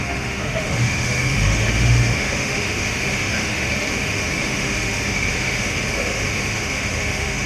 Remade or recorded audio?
remade